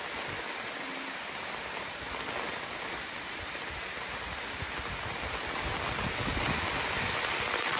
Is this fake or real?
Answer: real